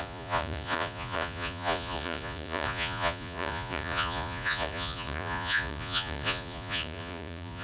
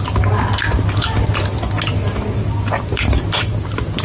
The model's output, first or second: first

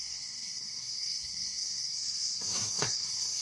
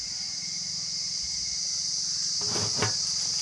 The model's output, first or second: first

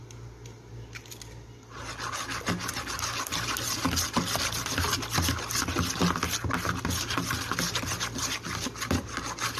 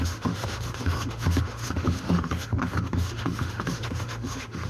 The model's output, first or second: second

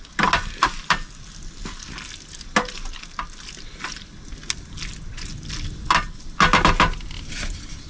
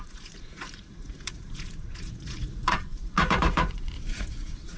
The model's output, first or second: second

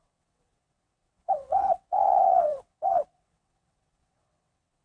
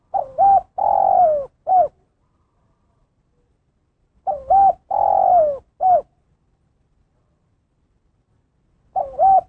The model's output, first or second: first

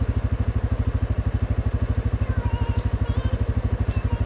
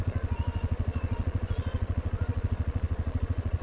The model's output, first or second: second